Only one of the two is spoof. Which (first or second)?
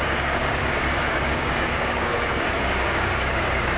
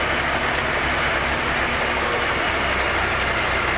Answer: first